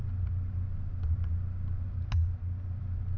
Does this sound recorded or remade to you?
recorded